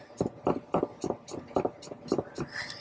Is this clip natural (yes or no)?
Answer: yes